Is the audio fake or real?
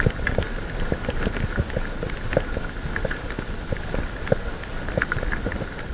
real